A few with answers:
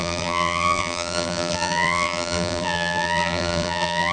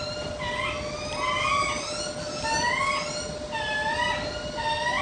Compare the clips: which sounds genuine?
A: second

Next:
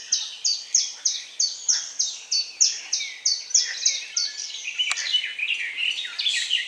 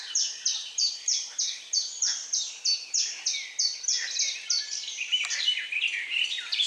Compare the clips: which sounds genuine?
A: first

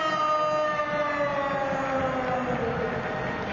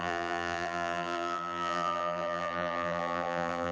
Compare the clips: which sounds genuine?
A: first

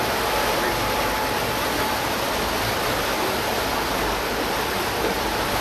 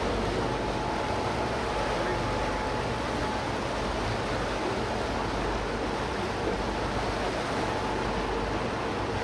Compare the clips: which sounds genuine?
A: second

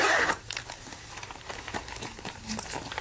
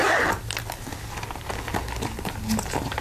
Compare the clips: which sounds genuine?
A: second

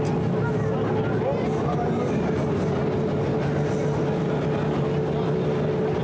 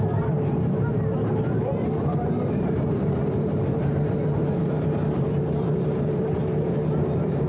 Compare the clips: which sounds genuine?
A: first